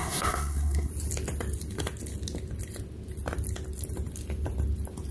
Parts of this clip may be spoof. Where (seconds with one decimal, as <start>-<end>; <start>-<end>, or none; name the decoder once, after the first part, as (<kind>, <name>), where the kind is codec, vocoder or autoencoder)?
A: 0.0-0.9 (codec, SNAC)

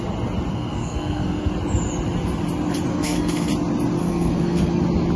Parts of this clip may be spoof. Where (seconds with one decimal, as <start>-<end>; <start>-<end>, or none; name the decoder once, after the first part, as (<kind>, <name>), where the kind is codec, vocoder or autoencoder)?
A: 0.5-1.5 (codec, SNAC); 2.9-3.5; 4.0-4.8

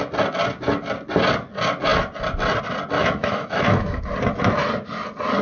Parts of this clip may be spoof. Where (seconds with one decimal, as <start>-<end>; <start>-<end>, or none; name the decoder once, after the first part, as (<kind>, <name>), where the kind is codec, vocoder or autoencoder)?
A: 3.0-4.0 (autoencoder, DAC-VAE)

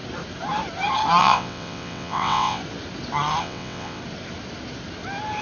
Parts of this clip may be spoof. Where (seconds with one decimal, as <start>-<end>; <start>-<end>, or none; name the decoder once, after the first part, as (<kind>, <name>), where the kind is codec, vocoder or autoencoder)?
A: 1.2-2.6 (vocoder, WaveNeXt); 3.4-4.0

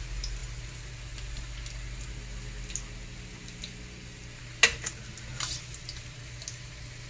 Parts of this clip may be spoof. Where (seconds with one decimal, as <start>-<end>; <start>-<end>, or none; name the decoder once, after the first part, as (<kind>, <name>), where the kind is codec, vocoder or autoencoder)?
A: none